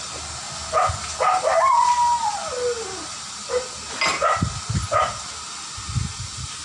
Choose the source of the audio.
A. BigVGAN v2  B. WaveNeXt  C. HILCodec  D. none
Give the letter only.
D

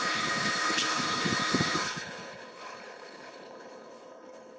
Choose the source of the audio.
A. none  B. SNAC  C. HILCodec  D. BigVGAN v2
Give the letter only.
C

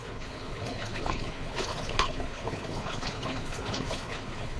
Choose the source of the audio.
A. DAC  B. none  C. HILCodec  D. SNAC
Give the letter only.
C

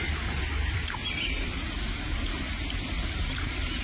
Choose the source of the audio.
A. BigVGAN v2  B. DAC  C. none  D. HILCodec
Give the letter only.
C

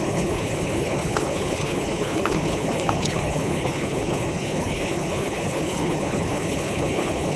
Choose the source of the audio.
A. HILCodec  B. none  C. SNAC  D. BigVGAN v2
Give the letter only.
A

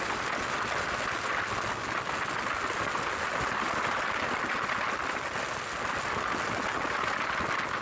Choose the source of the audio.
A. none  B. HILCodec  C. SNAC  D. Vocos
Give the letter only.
A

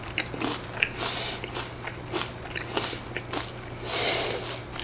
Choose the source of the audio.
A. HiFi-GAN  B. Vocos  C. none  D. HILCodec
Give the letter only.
C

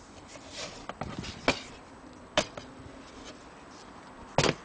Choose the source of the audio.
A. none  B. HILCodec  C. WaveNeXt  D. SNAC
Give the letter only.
A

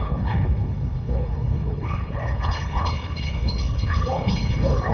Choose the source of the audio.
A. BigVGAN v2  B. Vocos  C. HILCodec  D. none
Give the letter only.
C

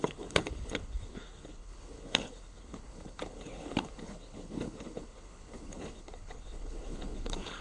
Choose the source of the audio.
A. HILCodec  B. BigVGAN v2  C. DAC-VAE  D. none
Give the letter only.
A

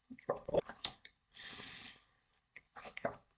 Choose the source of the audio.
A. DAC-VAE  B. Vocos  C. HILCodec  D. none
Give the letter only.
C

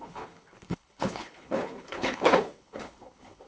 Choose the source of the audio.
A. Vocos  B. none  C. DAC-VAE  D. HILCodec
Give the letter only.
D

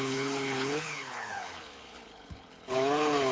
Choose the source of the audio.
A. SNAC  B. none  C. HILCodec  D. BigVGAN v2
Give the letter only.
C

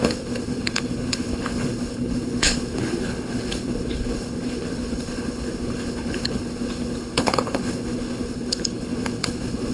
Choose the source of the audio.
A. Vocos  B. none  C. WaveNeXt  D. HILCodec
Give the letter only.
D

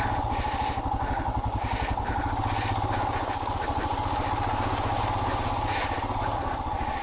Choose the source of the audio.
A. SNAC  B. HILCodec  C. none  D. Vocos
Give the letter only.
C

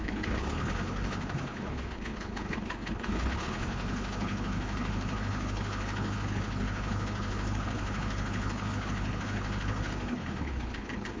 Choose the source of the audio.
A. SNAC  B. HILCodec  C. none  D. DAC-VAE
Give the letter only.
B